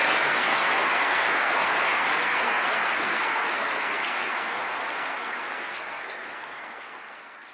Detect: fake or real fake